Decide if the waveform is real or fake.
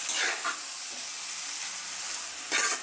real